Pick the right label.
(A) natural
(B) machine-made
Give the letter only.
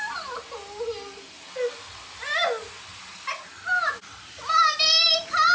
A